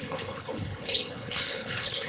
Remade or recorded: remade